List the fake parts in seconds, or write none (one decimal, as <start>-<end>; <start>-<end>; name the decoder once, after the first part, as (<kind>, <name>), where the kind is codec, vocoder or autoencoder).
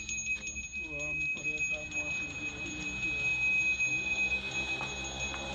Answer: none